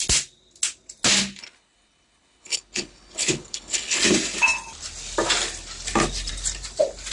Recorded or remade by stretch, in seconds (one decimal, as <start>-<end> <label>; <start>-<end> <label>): 0.0-1.4 recorded; 1.4-4.0 remade; 4.0-7.1 recorded